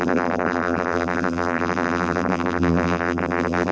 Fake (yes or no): yes